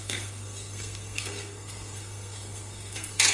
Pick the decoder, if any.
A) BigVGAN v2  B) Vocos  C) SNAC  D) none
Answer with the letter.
C